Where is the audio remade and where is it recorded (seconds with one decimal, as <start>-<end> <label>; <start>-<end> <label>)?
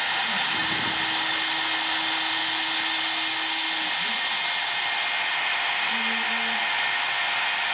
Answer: 0.0-0.6 remade; 0.6-5.2 recorded; 5.2-7.7 remade